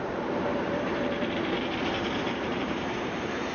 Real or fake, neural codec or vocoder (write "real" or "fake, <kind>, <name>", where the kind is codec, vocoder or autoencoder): fake, vocoder, BigVGAN v2